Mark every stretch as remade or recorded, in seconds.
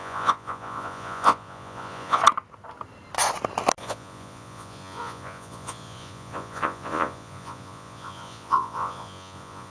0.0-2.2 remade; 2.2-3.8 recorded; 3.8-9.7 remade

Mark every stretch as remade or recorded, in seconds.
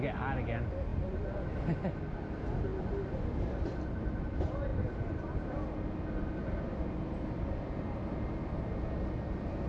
0.0-9.7 recorded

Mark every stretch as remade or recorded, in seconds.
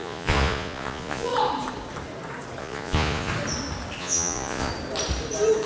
0.0-1.3 remade; 1.3-2.6 recorded; 2.6-3.3 remade; 3.3-4.0 recorded; 4.0-4.7 remade; 4.7-5.7 recorded